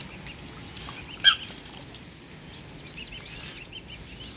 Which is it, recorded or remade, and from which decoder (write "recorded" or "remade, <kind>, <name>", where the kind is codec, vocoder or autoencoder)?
recorded